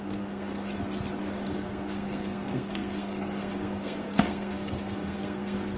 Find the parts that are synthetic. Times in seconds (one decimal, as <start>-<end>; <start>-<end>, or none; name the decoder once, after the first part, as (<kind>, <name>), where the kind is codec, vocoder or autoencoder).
0.0-0.7 (codec, SNAC); 1.5-5.8